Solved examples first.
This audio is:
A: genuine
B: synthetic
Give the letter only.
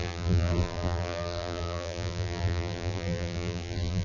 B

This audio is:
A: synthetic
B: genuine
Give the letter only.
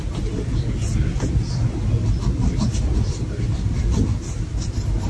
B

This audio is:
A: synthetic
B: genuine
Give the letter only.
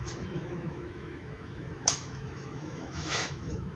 A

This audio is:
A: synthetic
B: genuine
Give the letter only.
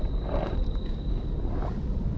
B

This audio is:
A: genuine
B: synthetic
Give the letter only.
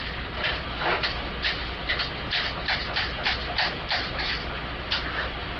A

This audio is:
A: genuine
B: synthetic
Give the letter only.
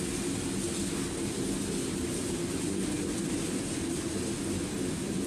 A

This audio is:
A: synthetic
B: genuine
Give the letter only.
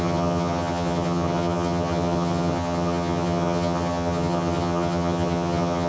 A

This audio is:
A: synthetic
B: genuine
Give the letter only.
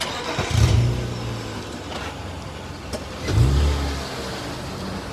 B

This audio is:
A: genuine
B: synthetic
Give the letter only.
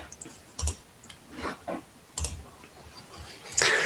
A